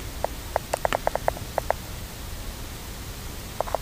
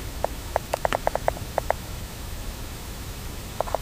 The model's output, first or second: second